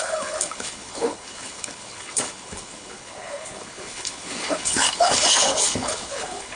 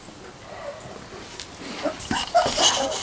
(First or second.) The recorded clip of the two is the second